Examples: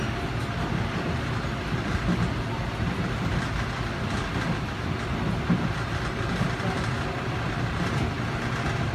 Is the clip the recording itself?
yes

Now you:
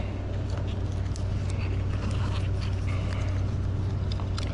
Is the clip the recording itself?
yes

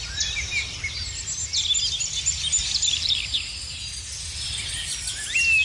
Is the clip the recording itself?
yes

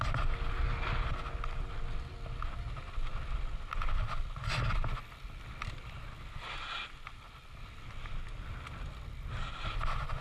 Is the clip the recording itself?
yes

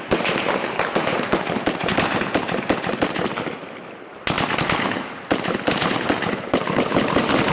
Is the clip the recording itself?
no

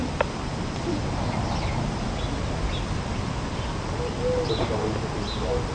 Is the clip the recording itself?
yes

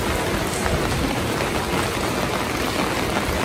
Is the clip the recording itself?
yes